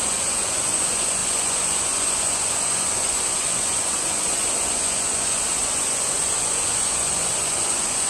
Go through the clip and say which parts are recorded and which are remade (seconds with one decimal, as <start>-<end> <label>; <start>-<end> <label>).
0.0-8.1 remade